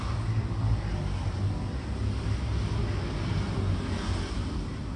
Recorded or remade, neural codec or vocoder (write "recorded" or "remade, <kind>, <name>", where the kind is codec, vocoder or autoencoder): recorded